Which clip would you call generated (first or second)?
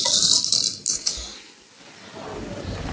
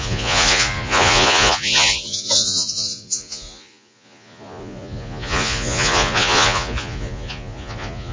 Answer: second